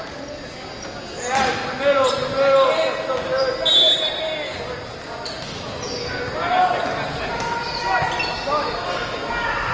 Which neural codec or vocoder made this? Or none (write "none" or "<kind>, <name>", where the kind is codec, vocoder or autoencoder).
none